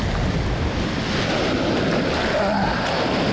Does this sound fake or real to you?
real